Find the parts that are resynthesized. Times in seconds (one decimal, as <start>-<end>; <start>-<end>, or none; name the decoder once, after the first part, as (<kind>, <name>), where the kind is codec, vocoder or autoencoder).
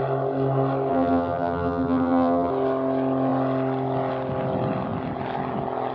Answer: 0.9-2.5 (vocoder, BigVGAN v2)